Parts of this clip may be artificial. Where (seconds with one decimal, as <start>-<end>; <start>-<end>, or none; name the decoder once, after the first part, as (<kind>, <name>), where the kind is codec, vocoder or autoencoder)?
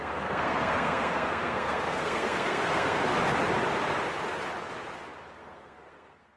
0.0-3.1 (codec, SNAC); 5.4-6.4